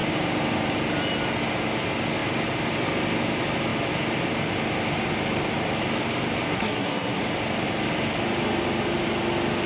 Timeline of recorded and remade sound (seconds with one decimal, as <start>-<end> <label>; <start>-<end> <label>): 0.0-6.5 recorded; 6.5-7.2 remade; 7.2-9.7 recorded

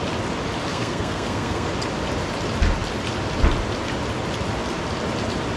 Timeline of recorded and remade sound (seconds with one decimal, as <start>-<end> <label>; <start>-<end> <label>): 0.0-0.7 recorded; 0.7-1.7 remade; 1.7-5.6 recorded

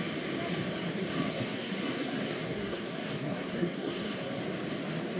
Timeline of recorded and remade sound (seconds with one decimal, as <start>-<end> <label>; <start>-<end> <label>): 0.0-1.3 recorded; 1.3-4.4 remade; 4.4-5.2 recorded

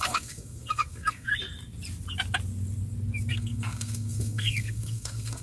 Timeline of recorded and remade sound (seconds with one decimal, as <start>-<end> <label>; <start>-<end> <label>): 0.0-1.3 remade; 1.3-3.3 recorded; 3.3-5.4 remade

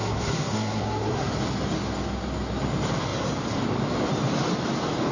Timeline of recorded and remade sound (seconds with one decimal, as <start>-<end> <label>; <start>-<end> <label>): 0.0-1.3 remade; 1.3-5.1 recorded

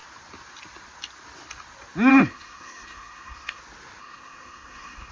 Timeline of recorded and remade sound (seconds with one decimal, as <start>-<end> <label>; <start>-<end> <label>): 0.0-2.1 recorded; 2.1-3.6 remade; 3.6-4.0 recorded; 4.0-5.1 remade